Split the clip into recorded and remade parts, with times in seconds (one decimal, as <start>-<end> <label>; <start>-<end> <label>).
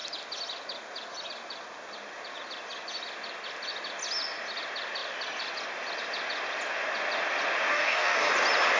0.0-7.7 recorded; 7.7-8.3 remade; 8.3-8.8 recorded